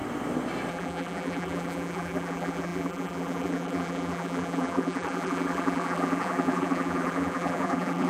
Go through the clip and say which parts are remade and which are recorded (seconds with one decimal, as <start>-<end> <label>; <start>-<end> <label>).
0.0-0.7 recorded; 0.7-8.1 remade